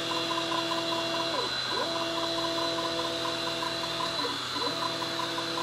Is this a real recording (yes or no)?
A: yes